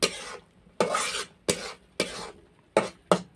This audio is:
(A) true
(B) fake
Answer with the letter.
A